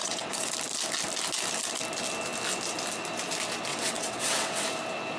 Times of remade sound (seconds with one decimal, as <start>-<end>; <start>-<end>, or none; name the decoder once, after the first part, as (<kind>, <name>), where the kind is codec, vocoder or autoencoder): 0.0-0.5 (vocoder, WaveNeXt); 3.7-4.7